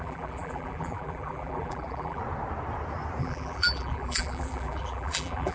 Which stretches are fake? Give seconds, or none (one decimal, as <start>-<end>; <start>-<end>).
0.0-2.2; 3.2-5.5

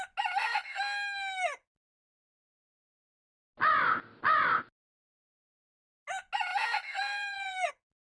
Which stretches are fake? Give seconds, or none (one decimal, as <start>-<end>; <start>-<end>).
6.5-7.7

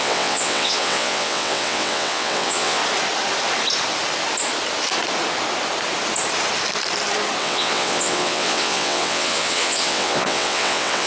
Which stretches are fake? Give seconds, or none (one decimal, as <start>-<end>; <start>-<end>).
0.0-2.8; 7.4-11.1

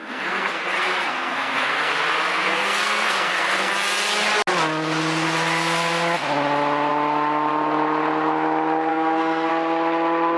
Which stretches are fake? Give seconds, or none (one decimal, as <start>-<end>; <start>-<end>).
0.0-1.9; 2.3-3.7; 8.9-9.5

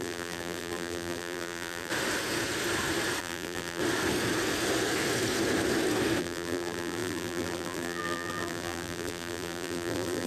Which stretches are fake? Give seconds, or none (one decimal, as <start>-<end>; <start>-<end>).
0.0-1.9; 3.2-3.8; 6.2-10.3